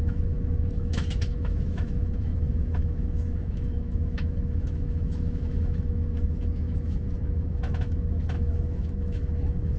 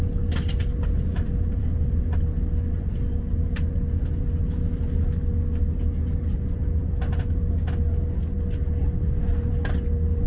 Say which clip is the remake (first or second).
first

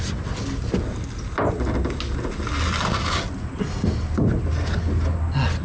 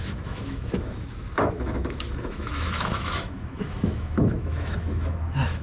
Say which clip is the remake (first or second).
second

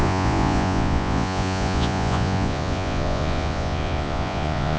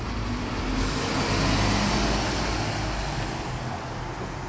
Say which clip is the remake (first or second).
first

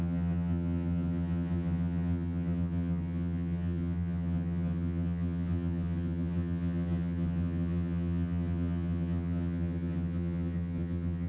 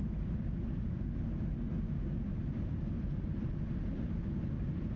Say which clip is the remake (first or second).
first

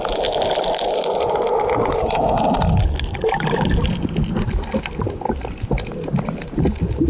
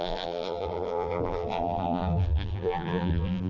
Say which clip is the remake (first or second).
second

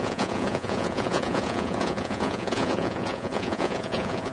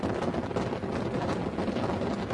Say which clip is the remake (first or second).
first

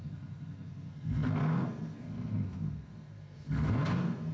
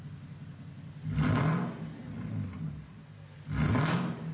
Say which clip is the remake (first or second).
first